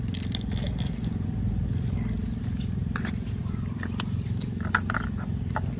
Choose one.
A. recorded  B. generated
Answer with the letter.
A